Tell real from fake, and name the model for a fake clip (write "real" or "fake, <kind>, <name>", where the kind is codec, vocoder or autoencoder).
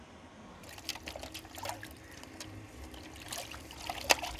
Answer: real